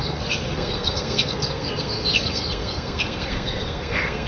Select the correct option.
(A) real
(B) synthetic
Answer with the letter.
B